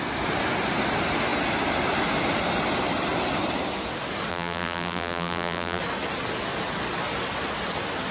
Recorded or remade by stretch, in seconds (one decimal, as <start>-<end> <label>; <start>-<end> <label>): 0.0-4.3 recorded; 4.3-5.8 remade; 5.8-8.1 recorded